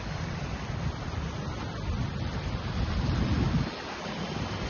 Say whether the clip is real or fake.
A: fake